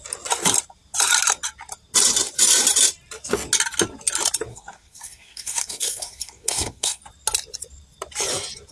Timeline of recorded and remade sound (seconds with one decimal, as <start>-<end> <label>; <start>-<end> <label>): 0.0-4.5 recorded; 4.5-7.0 remade; 7.0-8.7 recorded